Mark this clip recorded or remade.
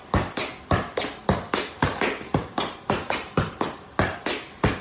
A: recorded